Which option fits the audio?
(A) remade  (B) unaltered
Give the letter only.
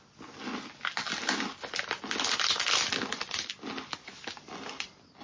B